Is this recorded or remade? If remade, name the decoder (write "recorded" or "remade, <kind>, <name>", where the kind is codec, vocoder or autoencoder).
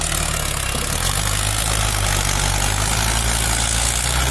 recorded